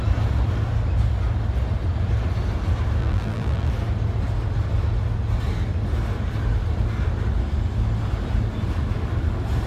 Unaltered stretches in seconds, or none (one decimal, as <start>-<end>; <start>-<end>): 0.0-3.0; 3.7-9.7